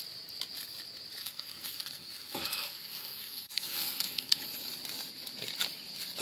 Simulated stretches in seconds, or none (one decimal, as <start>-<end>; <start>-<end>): 1.2-4.4